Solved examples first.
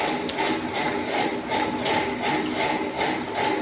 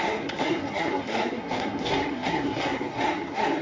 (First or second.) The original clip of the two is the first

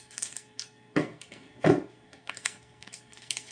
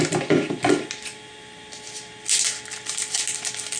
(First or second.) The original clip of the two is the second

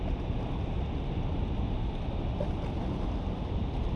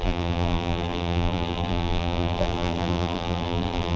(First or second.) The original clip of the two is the first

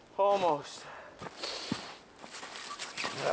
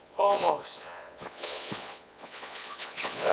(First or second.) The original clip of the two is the first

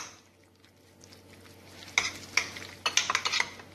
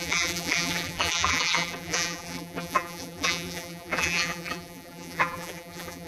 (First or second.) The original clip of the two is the first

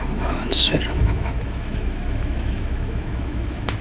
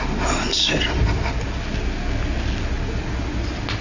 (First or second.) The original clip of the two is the second